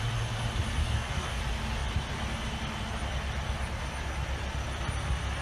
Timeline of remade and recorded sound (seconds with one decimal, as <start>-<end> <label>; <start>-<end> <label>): 0.0-0.8 recorded; 0.8-1.4 remade; 1.4-5.4 recorded

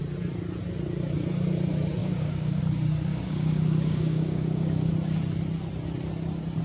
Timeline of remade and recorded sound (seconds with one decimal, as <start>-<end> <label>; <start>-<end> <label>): 0.0-2.0 recorded; 2.0-2.6 remade; 2.6-3.1 recorded; 3.1-4.9 remade; 4.9-6.6 recorded

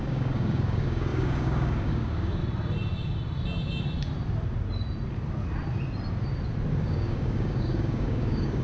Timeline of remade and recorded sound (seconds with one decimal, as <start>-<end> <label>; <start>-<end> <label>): 0.0-2.4 remade; 2.4-6.8 recorded; 6.8-8.6 remade

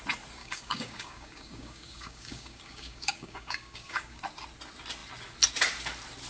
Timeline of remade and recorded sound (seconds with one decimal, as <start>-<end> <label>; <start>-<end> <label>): 0.0-0.4 recorded; 0.4-4.2 remade; 4.2-6.3 recorded

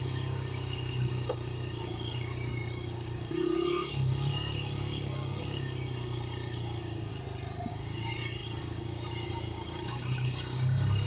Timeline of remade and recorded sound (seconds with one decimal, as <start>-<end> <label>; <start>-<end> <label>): 0.0-7.1 remade; 7.1-7.7 recorded; 7.7-11.1 remade

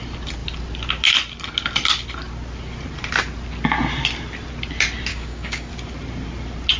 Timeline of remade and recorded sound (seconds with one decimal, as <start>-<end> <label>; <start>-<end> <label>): 0.0-5.1 recorded; 5.1-5.7 remade; 5.7-6.8 recorded

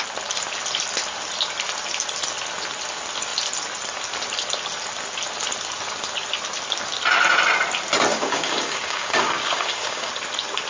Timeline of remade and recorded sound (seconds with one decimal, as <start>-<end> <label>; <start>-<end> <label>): 0.0-8.1 recorded; 8.1-10.1 remade; 10.1-10.7 recorded